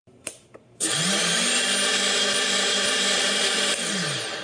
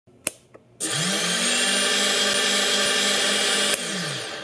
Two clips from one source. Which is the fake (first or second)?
first